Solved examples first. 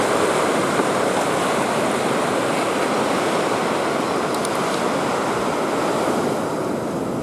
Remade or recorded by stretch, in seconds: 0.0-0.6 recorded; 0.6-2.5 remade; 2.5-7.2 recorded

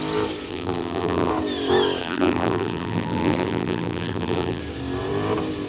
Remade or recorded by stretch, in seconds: 0.0-0.5 recorded; 0.5-1.3 remade; 1.3-2.0 recorded; 2.0-4.6 remade; 4.6-5.7 recorded